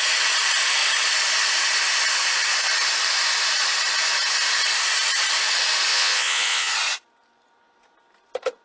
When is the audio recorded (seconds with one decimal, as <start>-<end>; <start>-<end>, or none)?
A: 0.0-5.9; 6.7-8.6